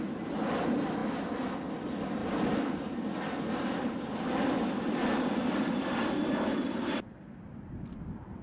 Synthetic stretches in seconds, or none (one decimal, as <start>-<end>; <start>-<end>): 2.2-7.0

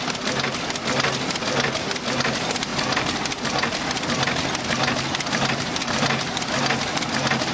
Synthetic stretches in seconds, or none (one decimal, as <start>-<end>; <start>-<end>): none

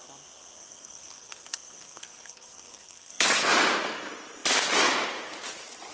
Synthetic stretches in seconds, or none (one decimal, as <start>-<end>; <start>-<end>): 0.6-3.5

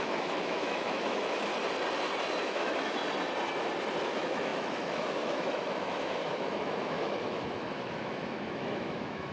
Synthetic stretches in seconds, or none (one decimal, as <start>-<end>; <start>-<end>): 0.0-1.5; 2.4-3.0; 4.0-9.3

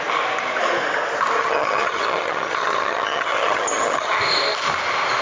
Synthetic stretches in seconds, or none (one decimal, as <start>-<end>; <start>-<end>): 1.4-4.2

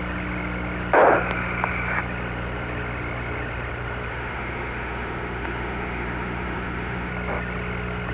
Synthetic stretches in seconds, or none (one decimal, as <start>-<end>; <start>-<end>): 4.1-7.1